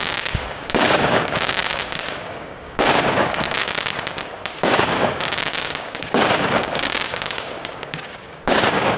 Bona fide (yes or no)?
no